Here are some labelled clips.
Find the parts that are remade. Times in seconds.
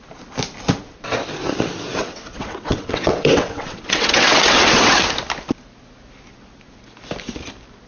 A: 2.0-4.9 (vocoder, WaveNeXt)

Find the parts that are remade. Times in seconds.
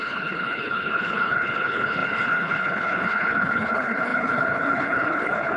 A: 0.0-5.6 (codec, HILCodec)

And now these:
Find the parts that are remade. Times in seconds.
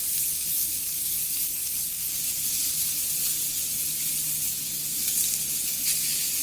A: 0.7-1.7 (codec, DAC)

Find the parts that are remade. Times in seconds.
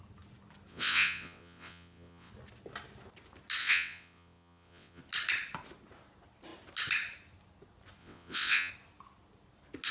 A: 0.7-2.3 (vocoder, WaveNeXt); 3.6-5.0; 8.0-8.7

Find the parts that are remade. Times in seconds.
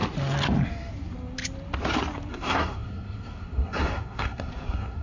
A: 2.3-5.0 (codec, SNAC)